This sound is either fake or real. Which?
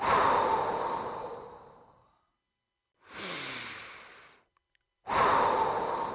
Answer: real